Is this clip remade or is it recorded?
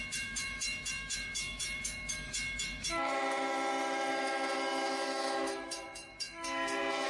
remade